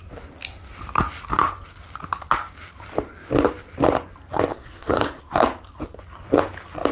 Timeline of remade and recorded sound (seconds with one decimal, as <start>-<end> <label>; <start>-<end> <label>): 0.0-4.5 recorded; 4.5-5.2 remade; 5.2-6.9 recorded